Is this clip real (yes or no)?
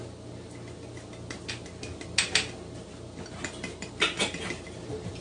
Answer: yes